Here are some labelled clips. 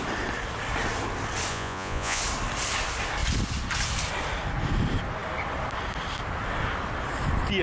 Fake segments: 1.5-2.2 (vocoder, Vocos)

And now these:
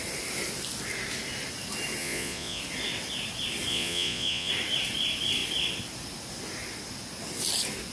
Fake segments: 2.0-2.6 (vocoder, Vocos); 3.7-4.5